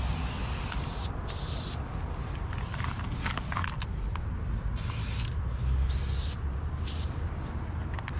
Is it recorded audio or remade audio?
recorded